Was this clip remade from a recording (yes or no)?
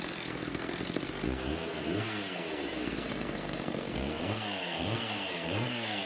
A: yes